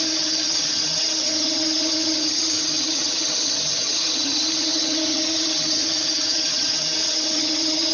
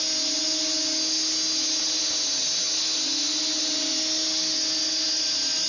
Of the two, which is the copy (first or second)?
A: first